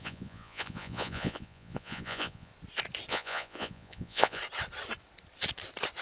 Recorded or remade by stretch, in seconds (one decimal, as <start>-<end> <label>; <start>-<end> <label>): 0.0-2.5 remade; 2.5-3.1 recorded; 3.1-4.4 remade; 4.4-6.0 recorded